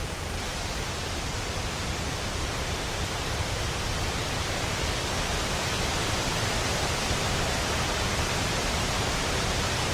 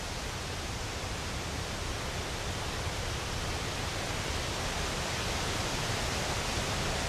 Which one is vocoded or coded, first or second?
first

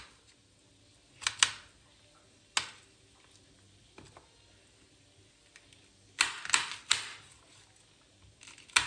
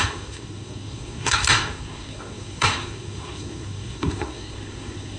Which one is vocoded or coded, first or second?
second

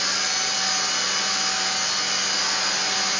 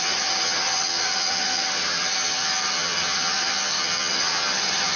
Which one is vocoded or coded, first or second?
second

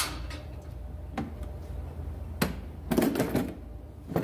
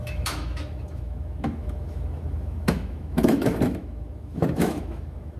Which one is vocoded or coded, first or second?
second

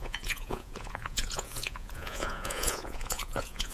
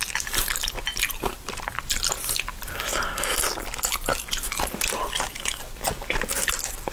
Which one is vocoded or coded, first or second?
first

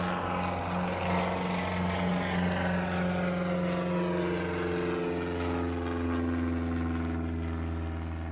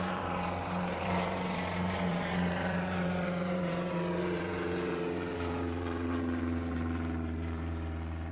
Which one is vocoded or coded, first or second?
second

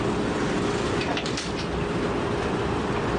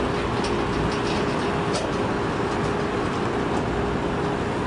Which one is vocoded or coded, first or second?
first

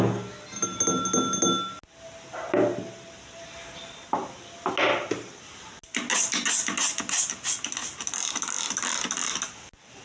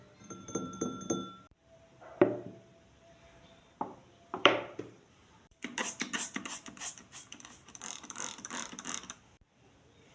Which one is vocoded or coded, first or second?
second